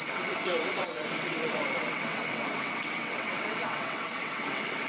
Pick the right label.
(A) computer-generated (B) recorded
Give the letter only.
A